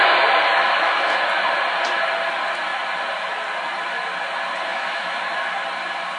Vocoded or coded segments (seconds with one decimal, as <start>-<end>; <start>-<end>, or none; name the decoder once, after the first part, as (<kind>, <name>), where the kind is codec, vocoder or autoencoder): 0.5-1.1 (autoencoder, DAC-VAE); 4.7-5.2